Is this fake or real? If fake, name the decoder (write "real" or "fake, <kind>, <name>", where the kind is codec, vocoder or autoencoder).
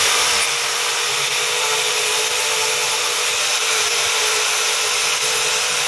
fake, vocoder, BigVGAN v2